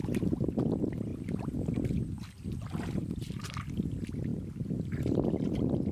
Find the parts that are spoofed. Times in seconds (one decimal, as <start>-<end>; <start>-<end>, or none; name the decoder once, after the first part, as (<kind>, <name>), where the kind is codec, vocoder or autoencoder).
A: none